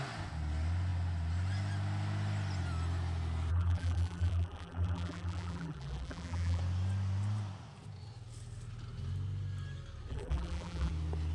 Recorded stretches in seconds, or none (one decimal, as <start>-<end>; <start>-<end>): 0.0-3.5; 6.6-10.1; 10.9-11.3